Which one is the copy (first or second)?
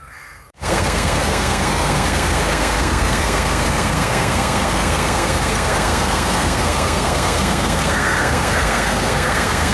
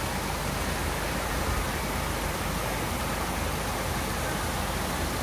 first